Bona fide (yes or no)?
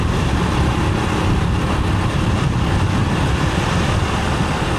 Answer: yes